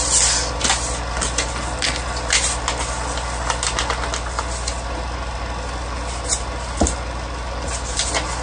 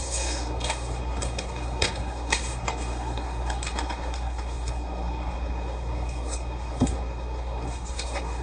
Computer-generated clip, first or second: second